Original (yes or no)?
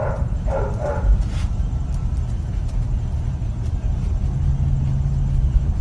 yes